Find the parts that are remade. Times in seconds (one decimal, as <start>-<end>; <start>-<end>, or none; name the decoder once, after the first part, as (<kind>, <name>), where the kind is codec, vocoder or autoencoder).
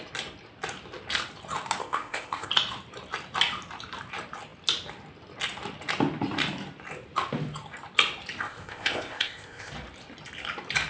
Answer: 1.8-2.5 (codec, ZipCodec); 8.4-9.7